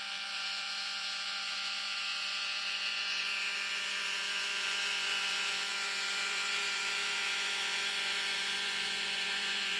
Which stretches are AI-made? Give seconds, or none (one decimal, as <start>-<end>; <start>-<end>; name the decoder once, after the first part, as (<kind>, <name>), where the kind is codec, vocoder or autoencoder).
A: 0.0-9.8 (vocoder, Vocos)